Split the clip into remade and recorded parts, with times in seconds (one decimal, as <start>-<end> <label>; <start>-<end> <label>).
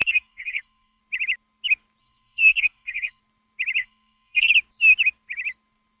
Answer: 0.0-1.0 remade; 1.0-2.0 recorded; 2.0-3.2 remade; 3.2-3.8 recorded; 3.8-4.5 remade; 4.5-6.0 recorded